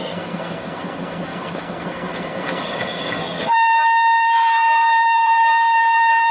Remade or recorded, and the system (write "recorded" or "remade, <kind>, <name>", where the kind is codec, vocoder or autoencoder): remade, codec, SNAC